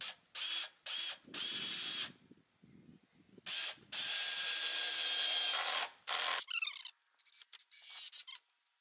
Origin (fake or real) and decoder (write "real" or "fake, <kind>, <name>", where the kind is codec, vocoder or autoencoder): real